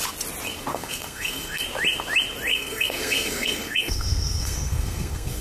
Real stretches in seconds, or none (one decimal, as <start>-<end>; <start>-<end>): 0.0-0.7; 1.6-2.5